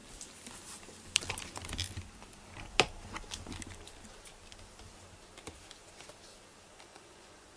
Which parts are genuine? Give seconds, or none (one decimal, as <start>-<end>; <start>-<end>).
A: 0.0-6.7

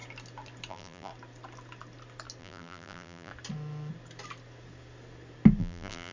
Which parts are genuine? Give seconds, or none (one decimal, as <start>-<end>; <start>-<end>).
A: 0.0-0.7; 1.1-2.4; 3.3-5.6

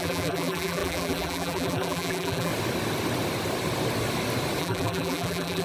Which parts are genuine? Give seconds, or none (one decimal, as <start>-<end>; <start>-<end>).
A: 2.5-4.6

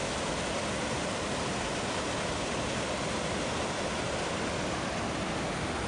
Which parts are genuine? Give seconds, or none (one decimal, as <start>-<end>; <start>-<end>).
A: 0.0-5.9

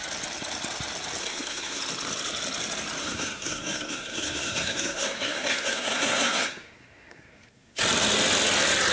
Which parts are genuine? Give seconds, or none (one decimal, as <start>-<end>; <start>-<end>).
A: 0.0-1.2; 1.8-3.0; 7.8-8.9